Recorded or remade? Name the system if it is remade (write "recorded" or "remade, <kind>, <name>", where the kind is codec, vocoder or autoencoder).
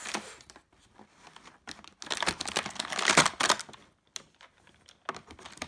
recorded